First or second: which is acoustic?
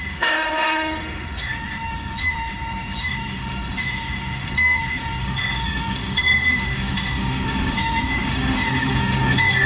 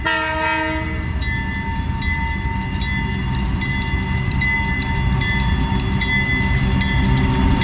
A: second